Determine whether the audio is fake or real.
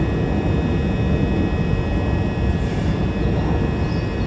real